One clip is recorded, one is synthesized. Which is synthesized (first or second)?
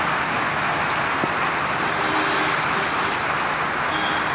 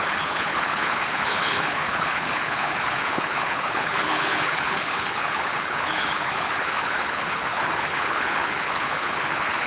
second